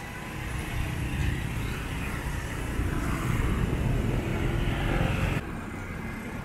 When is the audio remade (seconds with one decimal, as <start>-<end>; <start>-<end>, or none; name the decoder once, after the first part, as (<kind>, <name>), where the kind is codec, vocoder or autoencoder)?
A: none